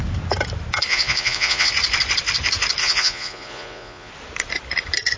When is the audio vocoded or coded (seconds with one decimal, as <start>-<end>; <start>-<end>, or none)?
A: 0.9-1.7; 2.8-4.1